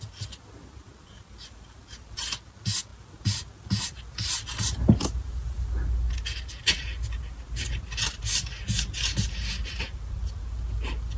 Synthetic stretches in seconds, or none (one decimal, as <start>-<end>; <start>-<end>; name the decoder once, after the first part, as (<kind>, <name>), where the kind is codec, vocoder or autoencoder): none